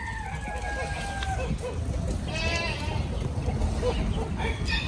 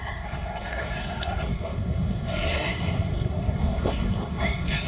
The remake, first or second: second